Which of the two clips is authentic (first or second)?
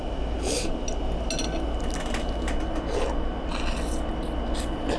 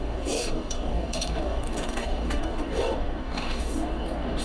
first